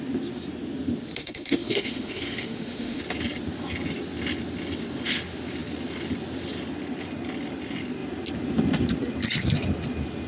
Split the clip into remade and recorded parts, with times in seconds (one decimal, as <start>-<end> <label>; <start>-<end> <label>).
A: 0.0-1.2 recorded; 1.2-3.0 remade; 3.0-10.3 recorded